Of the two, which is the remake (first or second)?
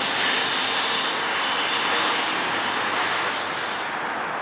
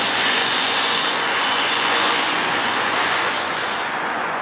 second